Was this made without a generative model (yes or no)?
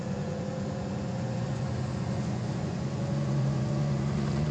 no